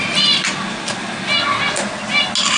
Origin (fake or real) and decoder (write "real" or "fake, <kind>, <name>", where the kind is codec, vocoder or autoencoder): real